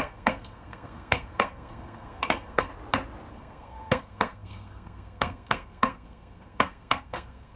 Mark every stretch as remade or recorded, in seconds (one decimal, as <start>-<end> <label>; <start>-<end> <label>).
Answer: 0.0-2.7 remade; 2.7-3.3 recorded; 3.3-7.6 remade